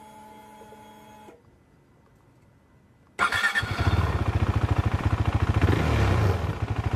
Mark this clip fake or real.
real